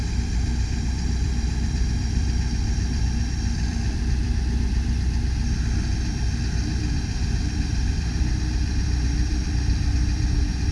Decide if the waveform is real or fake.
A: fake